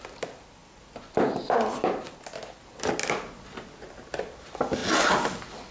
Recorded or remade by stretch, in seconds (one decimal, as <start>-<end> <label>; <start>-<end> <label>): 0.0-5.7 recorded